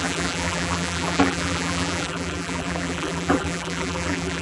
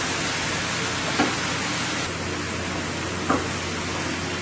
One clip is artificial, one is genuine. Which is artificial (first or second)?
first